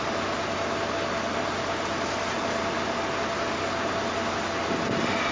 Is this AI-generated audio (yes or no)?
no